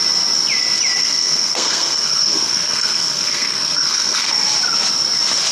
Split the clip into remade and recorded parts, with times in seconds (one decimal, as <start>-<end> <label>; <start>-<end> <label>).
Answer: 0.0-1.0 recorded; 1.0-4.3 remade; 4.3-5.5 recorded